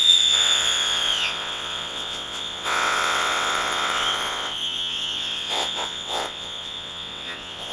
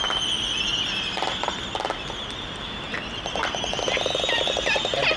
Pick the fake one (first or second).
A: first